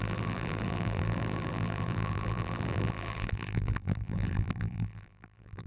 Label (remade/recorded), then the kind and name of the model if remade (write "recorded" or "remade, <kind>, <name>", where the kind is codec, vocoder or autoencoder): remade, vocoder, BigVGAN v2